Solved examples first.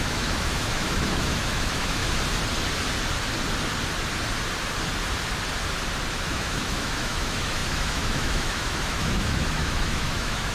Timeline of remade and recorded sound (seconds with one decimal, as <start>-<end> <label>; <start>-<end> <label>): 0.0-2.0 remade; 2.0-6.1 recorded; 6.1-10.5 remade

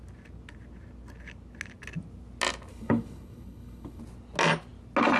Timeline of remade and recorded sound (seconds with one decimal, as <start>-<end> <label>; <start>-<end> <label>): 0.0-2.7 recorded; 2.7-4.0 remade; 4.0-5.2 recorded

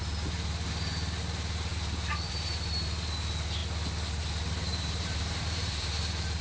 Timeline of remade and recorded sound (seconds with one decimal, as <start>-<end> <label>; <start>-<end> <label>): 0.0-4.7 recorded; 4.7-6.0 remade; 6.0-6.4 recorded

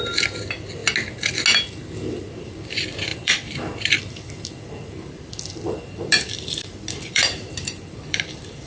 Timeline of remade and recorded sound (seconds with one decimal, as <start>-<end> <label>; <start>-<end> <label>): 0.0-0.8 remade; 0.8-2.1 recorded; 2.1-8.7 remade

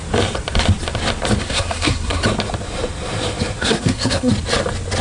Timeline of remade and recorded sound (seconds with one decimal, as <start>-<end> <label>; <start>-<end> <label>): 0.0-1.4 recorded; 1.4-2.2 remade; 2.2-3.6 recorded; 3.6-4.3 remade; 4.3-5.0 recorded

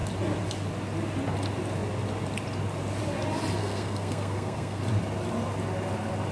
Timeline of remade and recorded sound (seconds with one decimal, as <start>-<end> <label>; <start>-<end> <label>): 0.0-3.6 recorded; 3.6-4.8 remade; 4.8-6.3 recorded

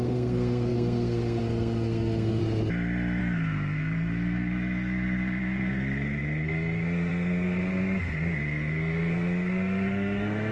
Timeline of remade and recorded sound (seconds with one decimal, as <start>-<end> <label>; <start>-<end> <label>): 0.0-2.4 remade; 2.4-3.2 recorded; 3.2-10.5 remade

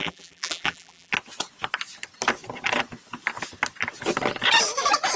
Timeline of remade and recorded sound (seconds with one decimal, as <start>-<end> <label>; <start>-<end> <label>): 0.0-1.1 remade; 1.1-5.2 recorded